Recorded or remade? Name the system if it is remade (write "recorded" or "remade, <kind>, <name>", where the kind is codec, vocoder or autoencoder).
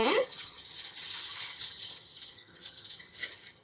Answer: remade, vocoder, HiFi-GAN